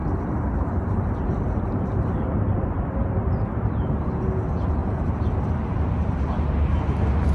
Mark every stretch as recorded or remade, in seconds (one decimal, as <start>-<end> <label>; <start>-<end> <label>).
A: 0.0-4.1 remade; 4.1-7.3 recorded